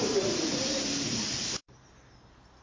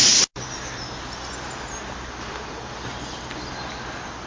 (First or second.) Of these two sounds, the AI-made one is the first